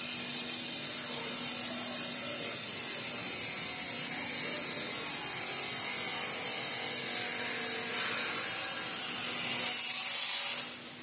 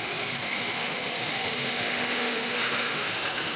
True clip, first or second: first